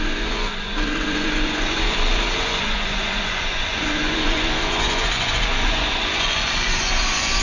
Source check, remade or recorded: remade